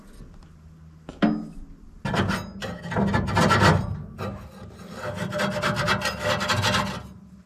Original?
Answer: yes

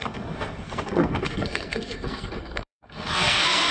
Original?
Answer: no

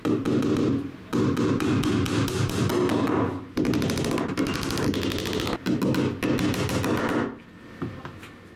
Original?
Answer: yes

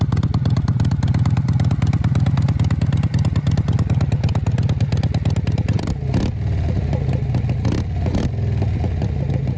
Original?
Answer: yes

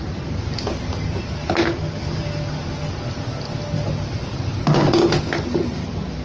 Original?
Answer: yes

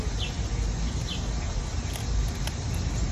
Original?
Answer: yes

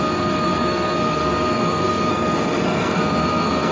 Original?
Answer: no